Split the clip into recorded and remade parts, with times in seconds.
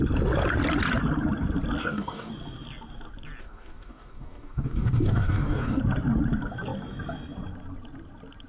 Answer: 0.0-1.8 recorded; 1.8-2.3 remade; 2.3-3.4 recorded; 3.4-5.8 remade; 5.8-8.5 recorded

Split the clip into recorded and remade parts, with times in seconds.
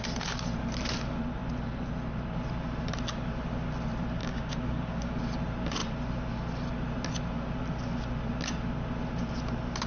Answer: 0.0-4.2 recorded; 4.2-5.2 remade; 5.2-9.9 recorded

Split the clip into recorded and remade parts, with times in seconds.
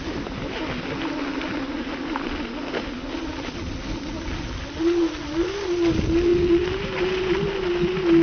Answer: 0.0-8.2 recorded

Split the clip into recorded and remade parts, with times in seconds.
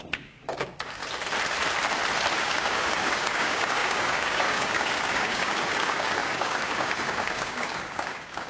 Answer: 0.0-1.0 remade; 1.0-2.4 recorded; 2.4-8.5 remade